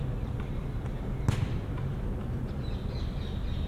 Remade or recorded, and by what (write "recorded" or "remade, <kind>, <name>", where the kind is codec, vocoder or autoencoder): recorded